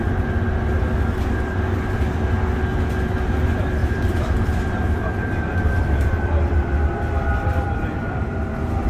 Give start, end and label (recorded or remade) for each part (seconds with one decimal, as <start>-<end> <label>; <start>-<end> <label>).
0.0-3.8 recorded; 3.8-8.5 remade; 8.5-8.9 recorded